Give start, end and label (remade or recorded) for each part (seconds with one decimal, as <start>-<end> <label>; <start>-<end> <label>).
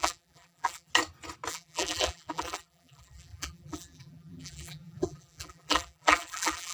0.0-0.9 remade; 0.9-1.5 recorded; 1.5-6.7 remade